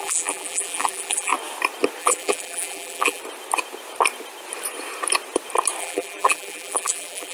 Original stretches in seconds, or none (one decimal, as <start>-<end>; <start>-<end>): 1.3-2.0; 3.2-5.8